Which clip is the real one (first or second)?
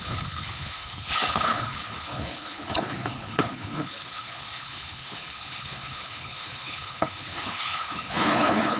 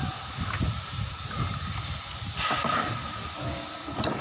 second